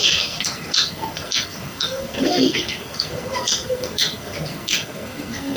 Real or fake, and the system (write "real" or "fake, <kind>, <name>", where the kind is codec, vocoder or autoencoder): fake, codec, SNAC